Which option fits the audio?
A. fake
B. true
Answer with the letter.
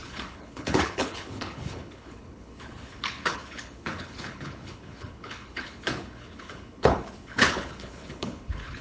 A